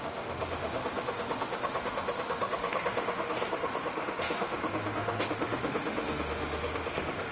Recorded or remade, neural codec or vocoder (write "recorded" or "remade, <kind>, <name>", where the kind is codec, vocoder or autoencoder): remade, autoencoder, DAC-VAE